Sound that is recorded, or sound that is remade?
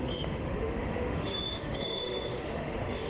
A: remade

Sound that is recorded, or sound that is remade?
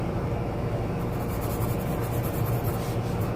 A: recorded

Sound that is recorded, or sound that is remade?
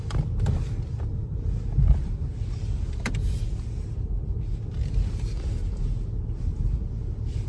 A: recorded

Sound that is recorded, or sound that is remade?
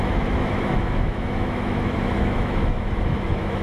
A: remade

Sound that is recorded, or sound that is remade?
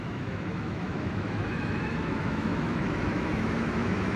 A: remade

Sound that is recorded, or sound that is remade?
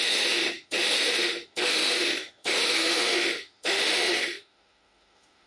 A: remade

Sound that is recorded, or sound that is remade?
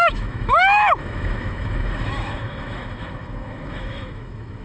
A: remade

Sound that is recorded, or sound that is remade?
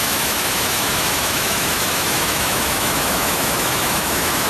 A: remade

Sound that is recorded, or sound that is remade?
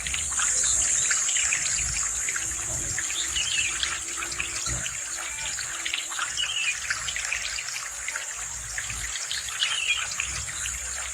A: recorded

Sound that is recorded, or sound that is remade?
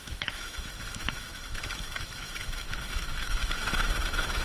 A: remade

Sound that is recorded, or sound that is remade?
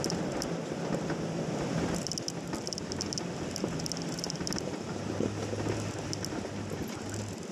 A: recorded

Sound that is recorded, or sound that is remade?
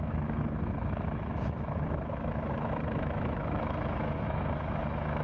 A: remade